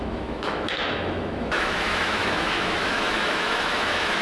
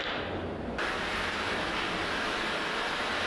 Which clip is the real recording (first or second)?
second